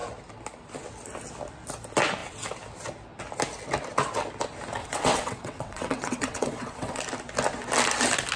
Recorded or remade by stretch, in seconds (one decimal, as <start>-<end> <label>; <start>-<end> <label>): 0.0-4.8 recorded; 4.8-7.0 remade; 7.0-8.4 recorded